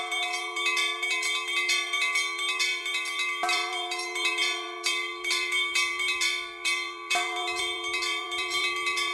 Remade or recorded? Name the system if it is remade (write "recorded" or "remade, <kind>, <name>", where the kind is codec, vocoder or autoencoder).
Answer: remade, vocoder, BigVGAN v2